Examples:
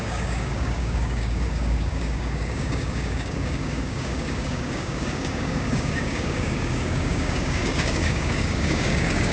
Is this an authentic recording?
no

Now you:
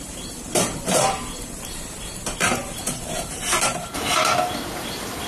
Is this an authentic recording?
no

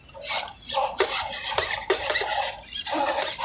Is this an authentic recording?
no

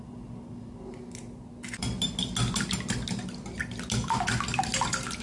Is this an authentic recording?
yes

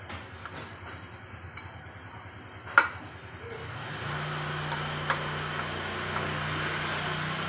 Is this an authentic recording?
yes